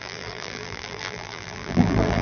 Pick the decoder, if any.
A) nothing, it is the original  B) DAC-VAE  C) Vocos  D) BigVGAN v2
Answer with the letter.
D